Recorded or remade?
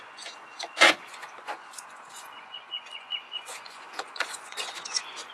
remade